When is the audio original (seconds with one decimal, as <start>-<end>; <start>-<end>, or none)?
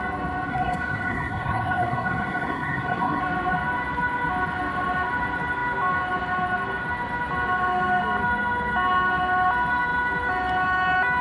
0.0-0.5; 3.2-11.2